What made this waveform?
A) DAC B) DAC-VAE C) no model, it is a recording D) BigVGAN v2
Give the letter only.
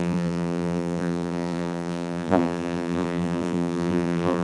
D